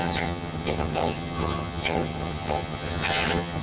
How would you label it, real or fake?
fake